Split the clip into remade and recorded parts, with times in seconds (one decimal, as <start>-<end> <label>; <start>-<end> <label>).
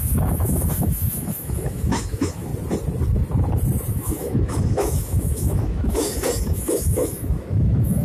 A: 0.0-2.5 remade; 2.5-3.9 recorded; 3.9-8.0 remade